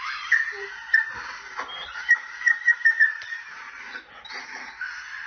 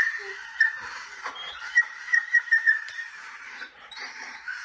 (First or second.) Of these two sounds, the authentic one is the first